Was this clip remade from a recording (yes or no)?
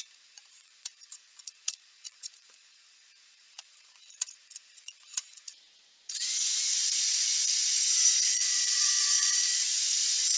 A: yes